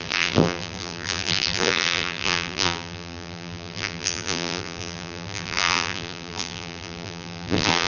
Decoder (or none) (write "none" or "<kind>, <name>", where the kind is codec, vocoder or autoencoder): vocoder, BigVGAN v2